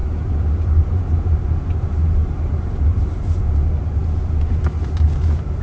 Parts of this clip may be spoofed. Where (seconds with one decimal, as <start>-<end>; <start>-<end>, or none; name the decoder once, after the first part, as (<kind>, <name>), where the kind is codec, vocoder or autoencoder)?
0.0-3.4 (vocoder, BigVGAN v2)